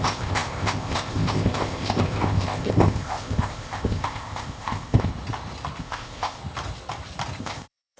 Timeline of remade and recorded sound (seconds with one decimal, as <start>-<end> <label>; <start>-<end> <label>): 0.0-5.1 remade; 5.1-5.8 recorded; 5.8-6.4 remade; 6.4-7.4 recorded; 7.4-8.0 remade